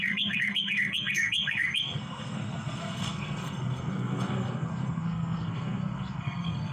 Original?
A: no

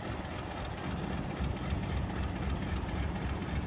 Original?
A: yes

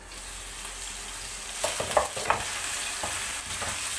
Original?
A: yes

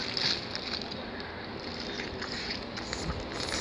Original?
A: yes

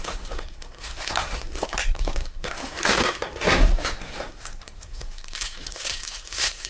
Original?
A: no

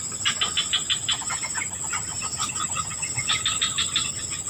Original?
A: yes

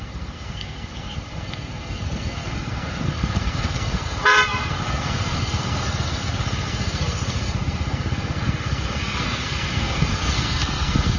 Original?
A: no